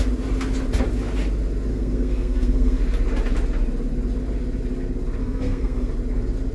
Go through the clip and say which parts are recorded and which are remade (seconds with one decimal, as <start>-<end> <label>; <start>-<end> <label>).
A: 0.0-1.7 recorded; 1.7-2.8 remade; 2.8-5.2 recorded; 5.2-5.9 remade; 5.9-6.5 recorded